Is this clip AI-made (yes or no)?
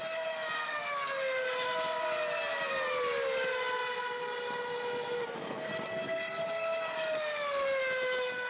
no